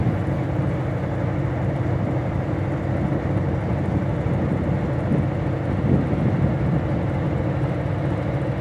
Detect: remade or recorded recorded